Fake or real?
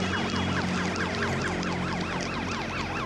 real